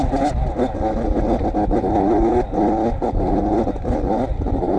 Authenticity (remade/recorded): recorded